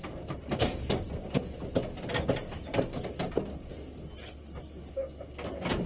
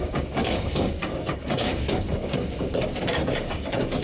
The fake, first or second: second